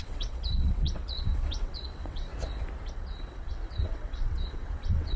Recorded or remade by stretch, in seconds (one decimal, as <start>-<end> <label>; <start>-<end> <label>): 0.0-2.3 remade; 2.3-2.9 recorded; 2.9-5.2 remade